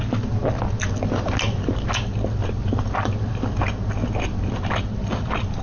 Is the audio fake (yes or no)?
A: no